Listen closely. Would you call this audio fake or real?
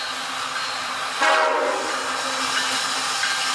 real